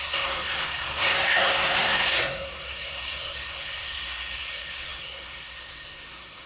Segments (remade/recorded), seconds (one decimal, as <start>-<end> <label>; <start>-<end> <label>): 0.0-6.5 remade